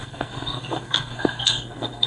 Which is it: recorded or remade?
remade